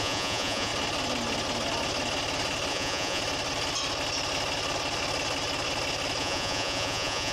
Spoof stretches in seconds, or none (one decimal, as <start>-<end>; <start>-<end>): 0.0-0.7; 2.7-3.2; 6.2-7.3